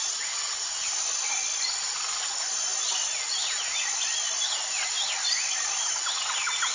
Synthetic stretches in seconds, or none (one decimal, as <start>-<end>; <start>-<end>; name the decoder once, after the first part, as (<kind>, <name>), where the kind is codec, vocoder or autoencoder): none